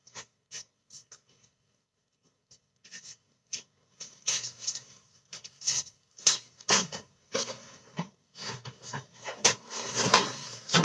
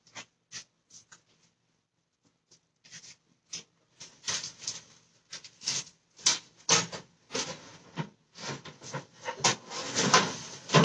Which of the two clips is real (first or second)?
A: second